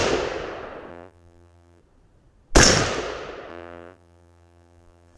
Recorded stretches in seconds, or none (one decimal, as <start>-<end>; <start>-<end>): 0.0-0.9; 1.8-3.5